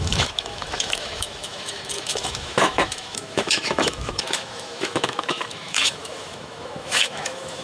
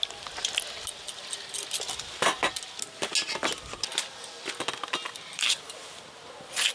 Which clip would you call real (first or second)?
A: second